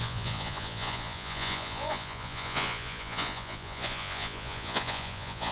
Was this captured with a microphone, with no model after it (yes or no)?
no